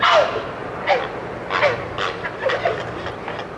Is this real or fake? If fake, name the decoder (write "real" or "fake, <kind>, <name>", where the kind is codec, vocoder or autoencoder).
real